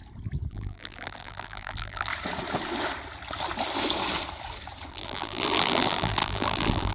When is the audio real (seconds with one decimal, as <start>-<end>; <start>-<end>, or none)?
0.0-0.5; 2.1-4.9